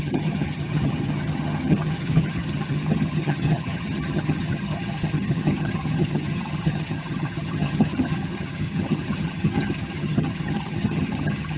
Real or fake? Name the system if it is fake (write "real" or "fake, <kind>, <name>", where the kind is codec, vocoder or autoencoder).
fake, vocoder, HiFi-GAN